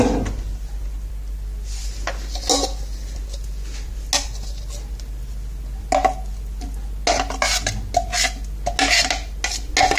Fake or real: real